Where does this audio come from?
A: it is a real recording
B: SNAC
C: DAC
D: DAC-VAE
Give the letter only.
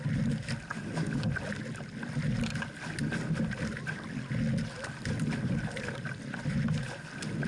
A